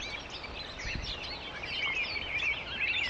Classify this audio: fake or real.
real